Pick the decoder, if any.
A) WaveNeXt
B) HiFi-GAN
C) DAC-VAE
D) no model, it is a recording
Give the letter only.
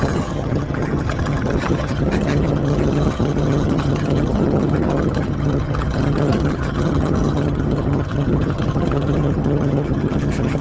B